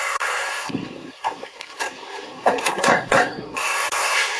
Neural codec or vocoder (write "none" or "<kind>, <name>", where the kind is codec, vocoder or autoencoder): codec, SNAC